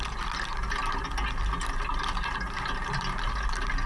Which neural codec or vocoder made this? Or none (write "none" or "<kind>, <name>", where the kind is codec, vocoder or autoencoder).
none